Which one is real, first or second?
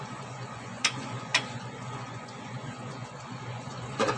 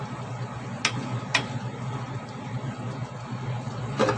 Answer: second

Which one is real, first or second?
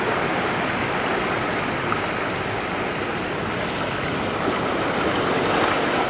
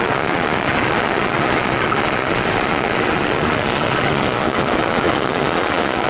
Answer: first